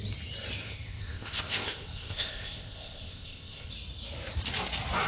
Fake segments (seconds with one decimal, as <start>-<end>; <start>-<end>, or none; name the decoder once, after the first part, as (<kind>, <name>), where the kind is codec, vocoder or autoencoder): 0.6-3.7 (codec, ZipCodec)